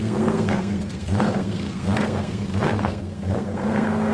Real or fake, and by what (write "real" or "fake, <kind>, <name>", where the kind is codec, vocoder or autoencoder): fake, codec, SNAC